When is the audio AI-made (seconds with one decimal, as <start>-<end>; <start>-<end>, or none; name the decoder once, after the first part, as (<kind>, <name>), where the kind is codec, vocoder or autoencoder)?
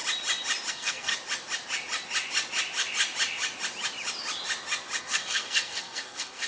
0.7-1.1 (codec, SNAC); 5.0-6.5